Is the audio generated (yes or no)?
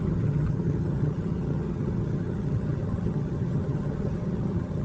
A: yes